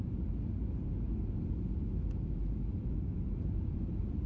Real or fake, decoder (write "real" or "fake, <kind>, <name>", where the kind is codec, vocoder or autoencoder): real